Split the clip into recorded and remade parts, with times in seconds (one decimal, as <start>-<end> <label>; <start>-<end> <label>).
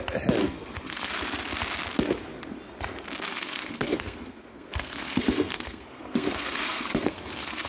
0.0-0.4 recorded; 0.4-1.1 remade; 1.1-3.3 recorded; 3.3-7.7 remade